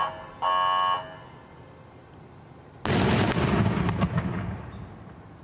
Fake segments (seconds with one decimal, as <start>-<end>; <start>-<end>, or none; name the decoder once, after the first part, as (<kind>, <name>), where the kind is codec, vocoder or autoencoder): none